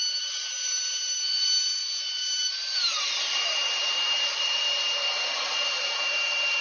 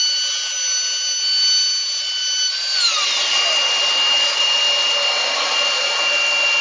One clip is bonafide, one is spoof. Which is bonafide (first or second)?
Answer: second